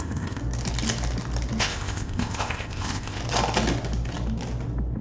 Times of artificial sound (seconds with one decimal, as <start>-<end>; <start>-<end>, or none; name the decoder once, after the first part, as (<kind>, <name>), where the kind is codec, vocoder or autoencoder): 0.0-0.4 (codec, ZipCodec); 1.6-3.2